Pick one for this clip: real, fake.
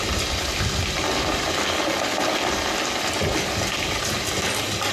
real